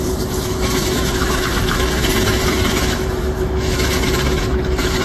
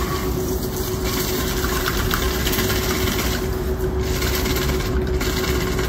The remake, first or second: first